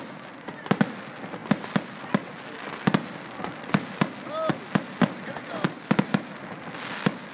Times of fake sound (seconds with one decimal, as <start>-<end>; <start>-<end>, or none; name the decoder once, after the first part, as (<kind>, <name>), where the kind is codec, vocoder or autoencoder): none

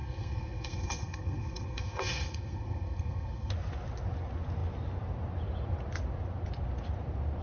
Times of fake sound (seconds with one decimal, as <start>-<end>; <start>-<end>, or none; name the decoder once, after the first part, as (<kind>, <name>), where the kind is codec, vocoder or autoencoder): 0.0-3.5 (codec, SNAC)

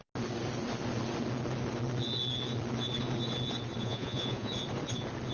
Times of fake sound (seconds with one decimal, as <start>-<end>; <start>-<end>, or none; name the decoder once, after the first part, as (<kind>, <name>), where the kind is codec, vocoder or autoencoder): 3.8-4.5 (vocoder, Vocos)